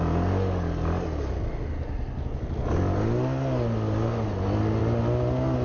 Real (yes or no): yes